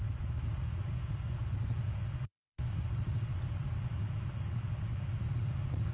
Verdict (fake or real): real